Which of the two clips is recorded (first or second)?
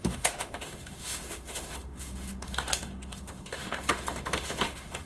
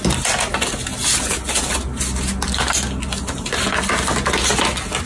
second